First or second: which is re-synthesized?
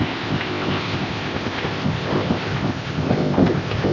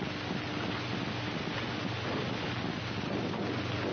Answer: first